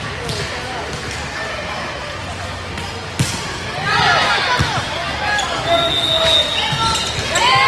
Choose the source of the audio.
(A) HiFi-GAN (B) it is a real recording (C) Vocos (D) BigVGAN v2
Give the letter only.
B